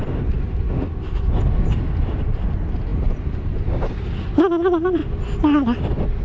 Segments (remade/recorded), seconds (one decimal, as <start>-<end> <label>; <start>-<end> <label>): 0.0-6.2 recorded